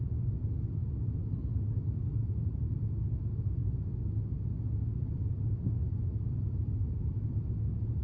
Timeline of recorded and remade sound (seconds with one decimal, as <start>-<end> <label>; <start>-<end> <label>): 0.0-2.2 recorded; 2.2-2.7 remade; 2.7-6.1 recorded; 6.1-7.1 remade; 7.1-8.0 recorded